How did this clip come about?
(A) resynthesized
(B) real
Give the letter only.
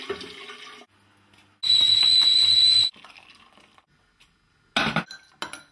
B